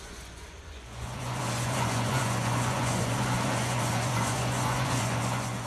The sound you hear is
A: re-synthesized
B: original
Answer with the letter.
A